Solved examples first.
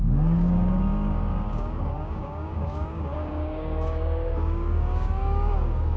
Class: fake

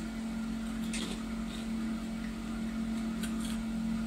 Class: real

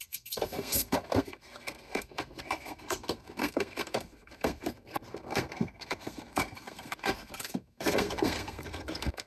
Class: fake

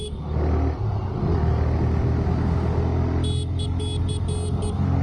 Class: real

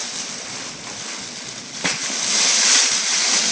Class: real